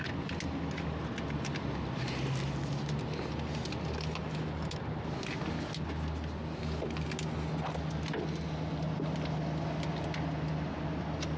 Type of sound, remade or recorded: recorded